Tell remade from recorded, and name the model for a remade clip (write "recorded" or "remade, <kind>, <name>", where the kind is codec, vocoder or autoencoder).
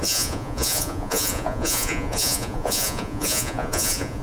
remade, vocoder, Vocos